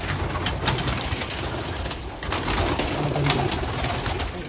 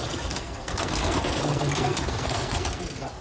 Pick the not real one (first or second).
second